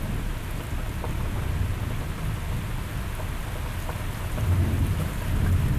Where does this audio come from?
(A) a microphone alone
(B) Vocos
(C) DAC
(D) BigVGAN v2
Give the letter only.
A